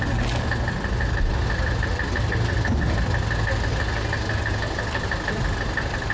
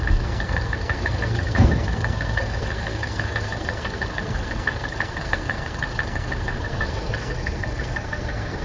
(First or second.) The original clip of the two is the first